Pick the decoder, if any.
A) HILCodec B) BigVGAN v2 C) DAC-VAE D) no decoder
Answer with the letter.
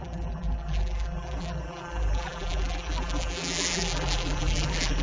B